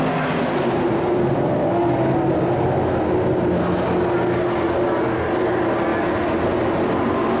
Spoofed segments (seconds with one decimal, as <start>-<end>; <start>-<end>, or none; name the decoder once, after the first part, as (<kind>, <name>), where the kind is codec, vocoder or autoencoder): none